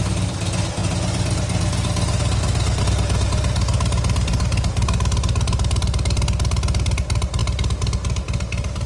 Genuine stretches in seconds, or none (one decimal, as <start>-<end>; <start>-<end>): 0.0-8.9